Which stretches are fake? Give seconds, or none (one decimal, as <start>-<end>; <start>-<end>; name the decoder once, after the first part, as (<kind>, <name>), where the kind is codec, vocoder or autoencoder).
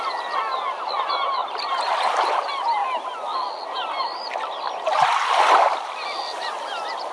none